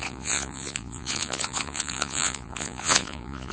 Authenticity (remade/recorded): remade